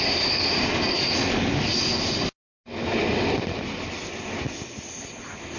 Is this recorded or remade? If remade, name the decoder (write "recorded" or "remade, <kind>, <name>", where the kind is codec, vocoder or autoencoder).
recorded